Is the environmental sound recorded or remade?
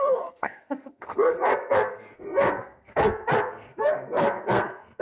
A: remade